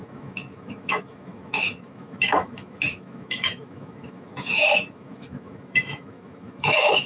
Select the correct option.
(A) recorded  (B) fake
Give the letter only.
B